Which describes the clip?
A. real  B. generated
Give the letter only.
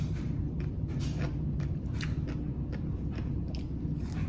A